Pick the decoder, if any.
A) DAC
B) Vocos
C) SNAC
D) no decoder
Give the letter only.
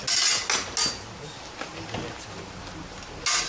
D